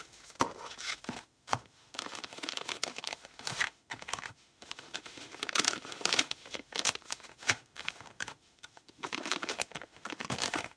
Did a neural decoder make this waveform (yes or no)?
yes